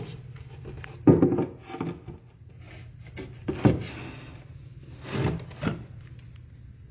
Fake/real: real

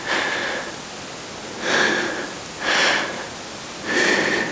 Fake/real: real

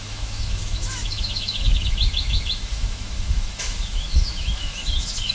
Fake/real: fake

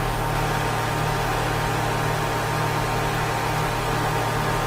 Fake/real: real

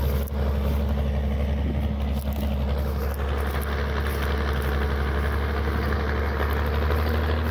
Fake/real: real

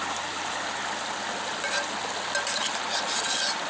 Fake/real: real